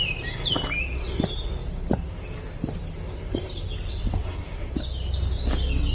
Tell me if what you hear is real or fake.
real